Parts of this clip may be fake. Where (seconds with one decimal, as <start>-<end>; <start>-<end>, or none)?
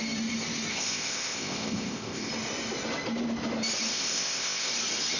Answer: 0.7-2.3; 3.9-4.7